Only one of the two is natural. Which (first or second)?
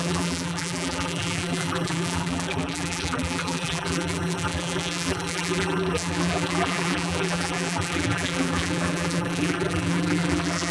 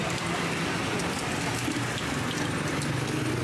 second